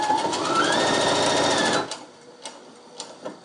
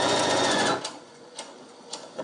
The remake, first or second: second